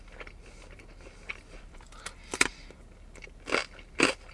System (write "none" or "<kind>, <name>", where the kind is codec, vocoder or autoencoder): none